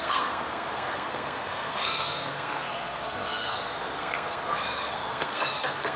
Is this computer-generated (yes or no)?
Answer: yes